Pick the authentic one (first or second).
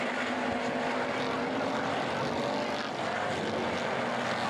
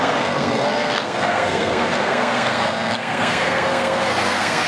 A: first